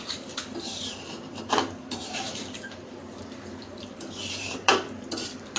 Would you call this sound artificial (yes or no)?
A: yes